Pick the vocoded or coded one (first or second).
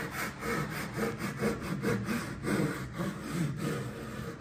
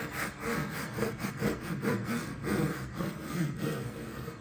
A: second